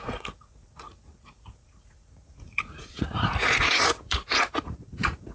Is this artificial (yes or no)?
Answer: yes